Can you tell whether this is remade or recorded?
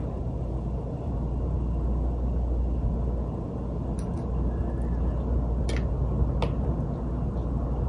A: recorded